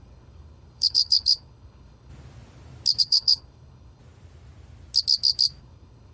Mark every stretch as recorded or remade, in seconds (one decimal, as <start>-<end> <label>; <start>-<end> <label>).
0.0-2.1 remade; 2.1-3.0 recorded; 3.0-4.0 remade; 4.0-5.6 recorded; 5.6-6.1 remade